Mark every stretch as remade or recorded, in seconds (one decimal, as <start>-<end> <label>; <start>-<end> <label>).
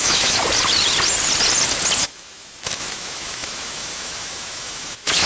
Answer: 0.0-0.4 remade; 0.4-2.0 recorded; 2.0-5.3 remade